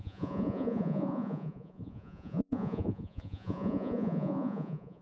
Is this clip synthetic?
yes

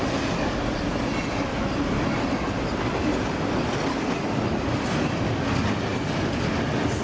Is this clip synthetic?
no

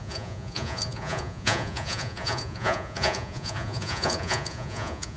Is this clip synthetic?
yes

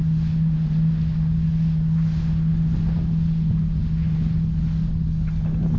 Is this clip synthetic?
no